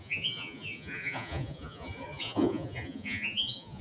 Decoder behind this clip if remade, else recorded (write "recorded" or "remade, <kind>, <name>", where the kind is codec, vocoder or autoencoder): remade, vocoder, Vocos